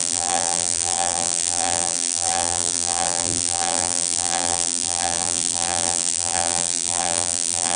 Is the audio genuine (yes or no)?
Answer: no